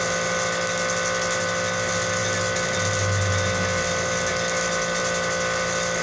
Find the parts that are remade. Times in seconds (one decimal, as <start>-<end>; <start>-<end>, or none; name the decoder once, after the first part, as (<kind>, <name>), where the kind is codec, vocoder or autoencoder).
2.2-6.0 (vocoder, BigVGAN v2)